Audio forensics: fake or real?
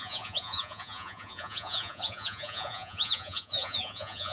fake